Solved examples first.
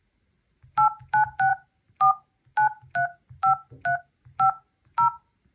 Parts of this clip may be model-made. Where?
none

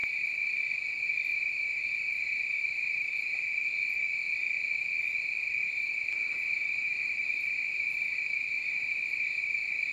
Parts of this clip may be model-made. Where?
0.0-0.6 (vocoder, BigVGAN v2); 1.3-3.1; 5.6-9.5

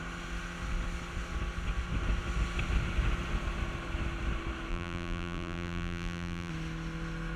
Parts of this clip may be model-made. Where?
4.7-6.5 (vocoder, BigVGAN v2)

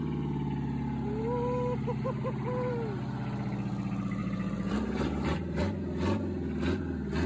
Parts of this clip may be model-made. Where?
4.2-5.6 (vocoder, BigVGAN v2)

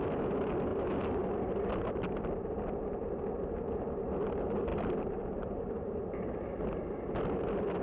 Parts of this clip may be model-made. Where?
0.7-1.8 (vocoder, BigVGAN v2); 4.7-6.2